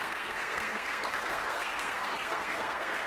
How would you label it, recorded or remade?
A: remade